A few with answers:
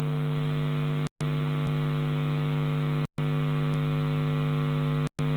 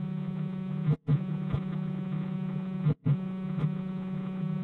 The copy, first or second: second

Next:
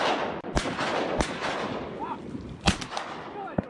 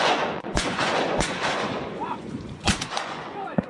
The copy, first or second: second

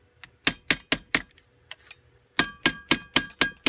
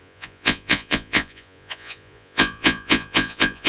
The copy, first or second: second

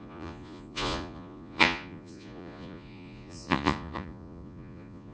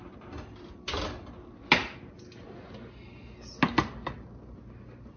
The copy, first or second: first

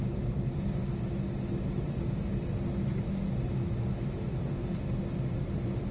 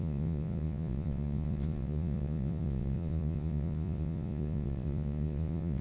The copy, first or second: second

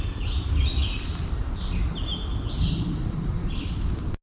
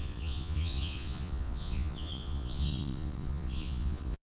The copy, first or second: second